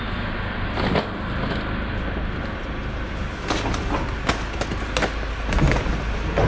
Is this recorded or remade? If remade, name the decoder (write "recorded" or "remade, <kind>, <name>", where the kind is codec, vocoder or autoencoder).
recorded